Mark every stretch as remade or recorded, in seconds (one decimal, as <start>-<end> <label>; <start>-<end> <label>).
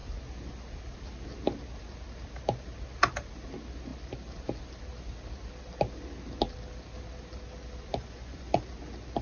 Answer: 0.0-7.9 recorded; 7.9-8.6 remade; 8.6-9.2 recorded